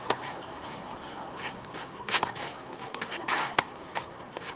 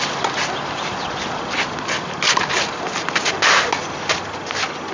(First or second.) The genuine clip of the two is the second